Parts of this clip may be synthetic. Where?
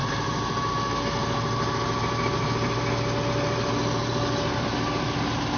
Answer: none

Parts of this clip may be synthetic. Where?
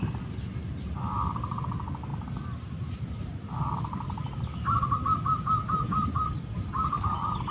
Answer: 2.1-3.6 (vocoder, BigVGAN v2)